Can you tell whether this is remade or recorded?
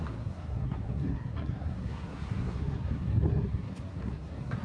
remade